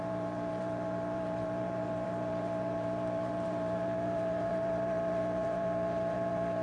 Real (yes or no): no